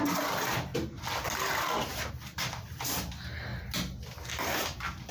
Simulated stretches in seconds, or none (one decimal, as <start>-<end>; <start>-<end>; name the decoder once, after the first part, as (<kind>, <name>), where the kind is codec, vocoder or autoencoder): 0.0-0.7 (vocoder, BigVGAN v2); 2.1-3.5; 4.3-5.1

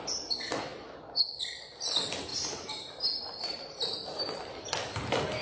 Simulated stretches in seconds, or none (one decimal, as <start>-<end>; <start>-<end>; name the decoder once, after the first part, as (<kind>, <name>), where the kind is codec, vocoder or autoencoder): 0.0-0.7 (vocoder, BigVGAN v2); 1.3-5.4

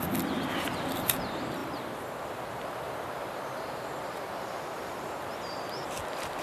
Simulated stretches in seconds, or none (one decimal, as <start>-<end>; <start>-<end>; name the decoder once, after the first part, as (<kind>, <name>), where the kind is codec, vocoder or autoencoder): 1.6-5.4 (vocoder, BigVGAN v2)